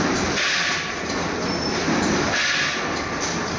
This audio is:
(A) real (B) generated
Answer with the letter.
A